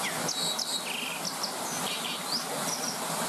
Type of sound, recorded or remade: recorded